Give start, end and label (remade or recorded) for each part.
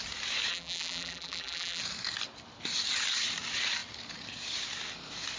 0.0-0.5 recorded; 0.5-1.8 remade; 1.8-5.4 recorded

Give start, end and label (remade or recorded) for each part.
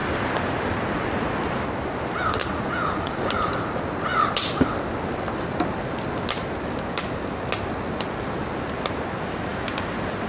0.0-2.4 recorded; 2.4-3.2 remade; 3.2-10.3 recorded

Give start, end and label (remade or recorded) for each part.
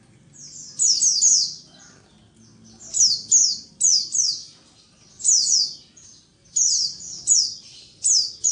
0.0-8.5 recorded